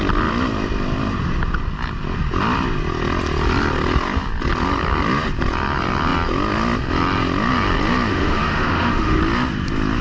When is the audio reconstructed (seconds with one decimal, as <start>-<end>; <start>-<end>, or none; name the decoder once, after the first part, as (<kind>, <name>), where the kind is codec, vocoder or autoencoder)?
8.1-9.2 (autoencoder, DAC-VAE)